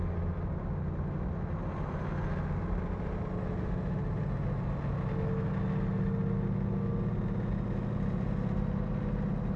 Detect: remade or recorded recorded